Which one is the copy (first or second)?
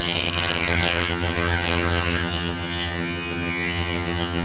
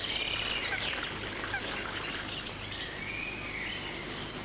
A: first